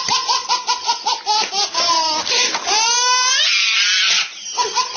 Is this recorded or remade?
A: recorded